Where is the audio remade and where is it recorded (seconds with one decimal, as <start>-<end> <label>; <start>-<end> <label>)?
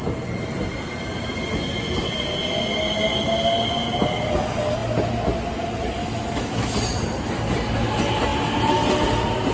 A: 0.0-6.0 recorded; 6.0-6.7 remade; 6.7-9.5 recorded